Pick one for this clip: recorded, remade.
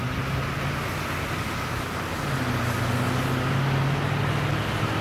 recorded